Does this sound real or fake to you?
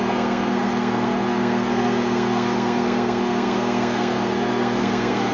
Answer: fake